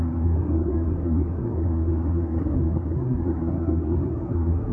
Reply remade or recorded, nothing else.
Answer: remade